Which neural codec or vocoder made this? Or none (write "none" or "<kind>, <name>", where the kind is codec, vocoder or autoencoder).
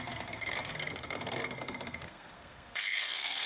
codec, SNAC